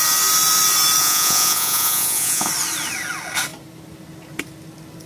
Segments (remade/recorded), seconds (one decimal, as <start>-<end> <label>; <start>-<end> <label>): 0.0-1.0 recorded; 1.0-2.5 remade; 2.5-5.1 recorded